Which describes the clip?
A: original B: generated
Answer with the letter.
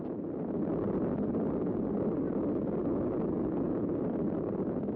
A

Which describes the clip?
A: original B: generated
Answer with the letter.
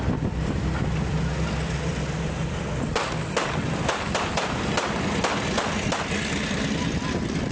A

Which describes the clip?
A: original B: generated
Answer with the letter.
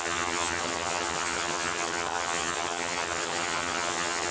B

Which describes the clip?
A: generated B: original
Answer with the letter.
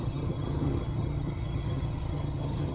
A